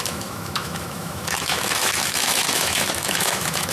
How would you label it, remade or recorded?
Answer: remade